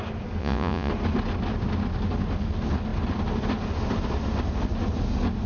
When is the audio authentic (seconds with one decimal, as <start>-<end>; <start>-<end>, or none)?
0.0-0.4; 0.9-5.5